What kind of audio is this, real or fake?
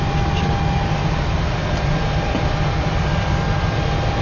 real